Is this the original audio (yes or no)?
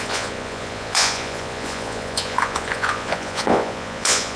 no